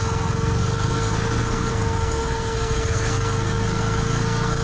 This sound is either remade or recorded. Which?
remade